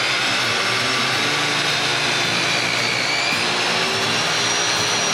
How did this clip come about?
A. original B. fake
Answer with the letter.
A